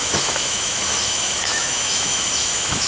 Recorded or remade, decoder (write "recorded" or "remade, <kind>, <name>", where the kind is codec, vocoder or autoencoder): remade, autoencoder, DAC-VAE